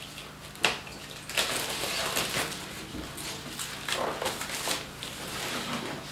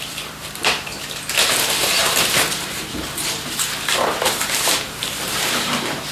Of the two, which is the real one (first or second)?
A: first